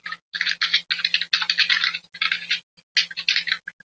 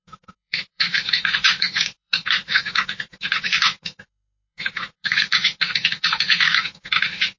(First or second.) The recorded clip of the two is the first